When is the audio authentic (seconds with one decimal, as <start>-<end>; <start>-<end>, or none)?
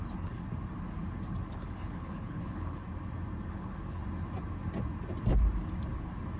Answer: 0.4-1.5; 2.8-3.5; 4.0-6.4